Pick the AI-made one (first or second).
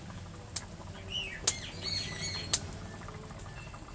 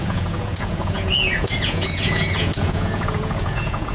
second